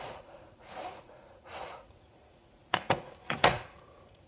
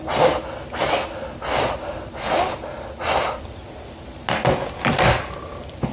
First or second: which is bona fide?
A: second